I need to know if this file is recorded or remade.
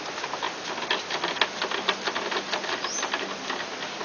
recorded